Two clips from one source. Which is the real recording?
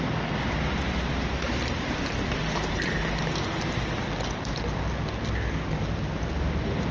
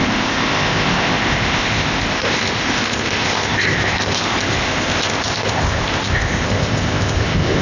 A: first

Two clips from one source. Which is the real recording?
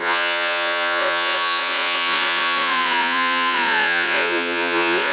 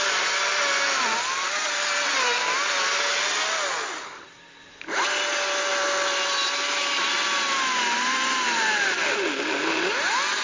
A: second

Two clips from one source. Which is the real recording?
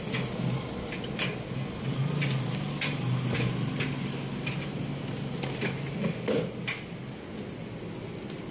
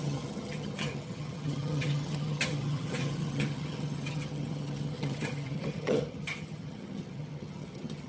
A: first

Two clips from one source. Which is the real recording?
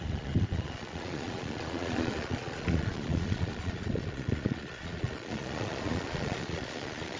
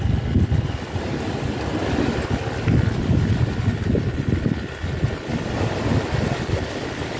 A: second